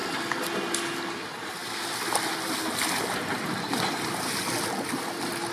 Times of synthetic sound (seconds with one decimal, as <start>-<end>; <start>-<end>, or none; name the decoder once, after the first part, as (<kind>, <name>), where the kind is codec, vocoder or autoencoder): none